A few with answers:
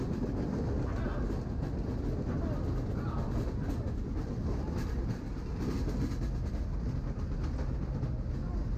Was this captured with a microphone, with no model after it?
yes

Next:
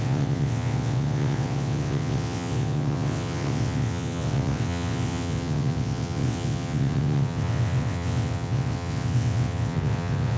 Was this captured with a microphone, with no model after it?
no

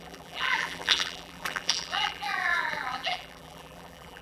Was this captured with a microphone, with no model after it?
no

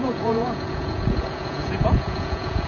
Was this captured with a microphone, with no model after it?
no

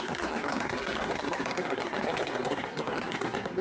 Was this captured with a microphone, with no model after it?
no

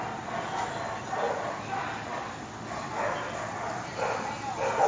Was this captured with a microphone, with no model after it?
yes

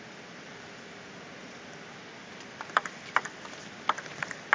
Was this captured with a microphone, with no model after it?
yes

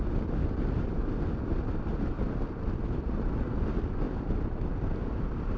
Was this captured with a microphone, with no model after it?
yes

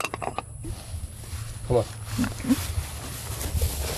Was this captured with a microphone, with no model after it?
yes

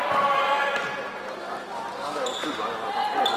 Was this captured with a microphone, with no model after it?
yes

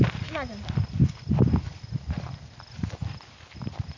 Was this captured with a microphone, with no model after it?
yes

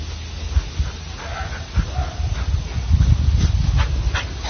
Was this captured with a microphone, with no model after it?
yes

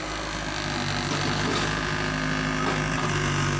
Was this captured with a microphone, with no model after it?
yes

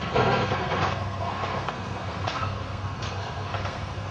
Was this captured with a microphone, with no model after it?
no